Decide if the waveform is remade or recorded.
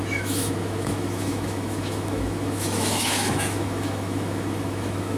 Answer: remade